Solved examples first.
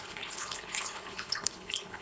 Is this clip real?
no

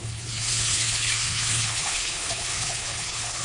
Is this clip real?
no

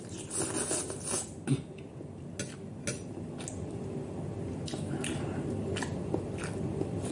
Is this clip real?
yes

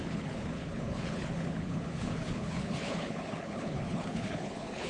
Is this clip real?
no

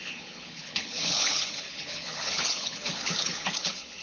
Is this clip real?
no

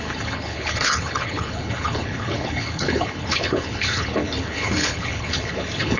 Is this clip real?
no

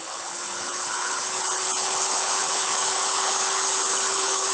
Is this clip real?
no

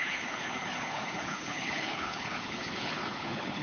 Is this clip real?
no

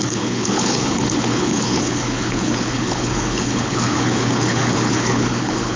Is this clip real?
no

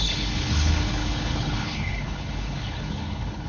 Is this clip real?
no